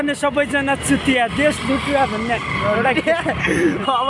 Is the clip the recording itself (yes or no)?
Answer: yes